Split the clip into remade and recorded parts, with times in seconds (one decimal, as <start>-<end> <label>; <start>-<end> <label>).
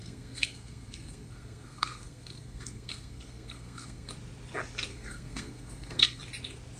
0.0-4.1 remade; 4.1-4.9 recorded; 4.9-6.2 remade; 6.2-6.8 recorded